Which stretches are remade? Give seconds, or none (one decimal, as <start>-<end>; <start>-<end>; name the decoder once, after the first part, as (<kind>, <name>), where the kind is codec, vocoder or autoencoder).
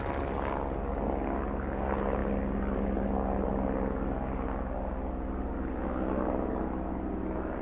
none